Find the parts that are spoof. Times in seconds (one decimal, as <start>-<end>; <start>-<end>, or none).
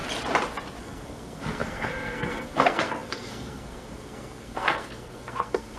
0.8-5.8